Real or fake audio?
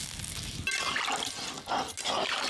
real